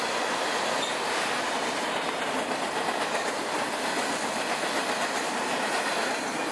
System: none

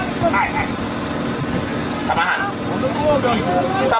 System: none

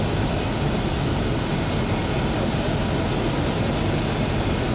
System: none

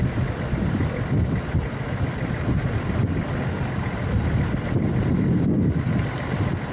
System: none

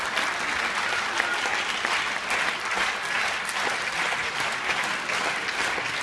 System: none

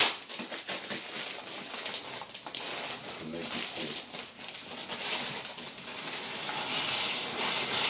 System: none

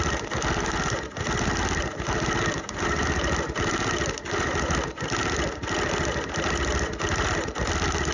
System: none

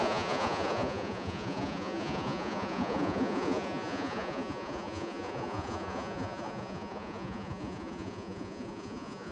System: vocoder, Vocos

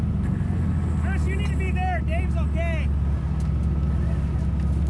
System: none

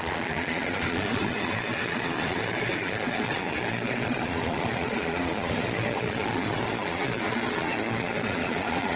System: vocoder, Vocos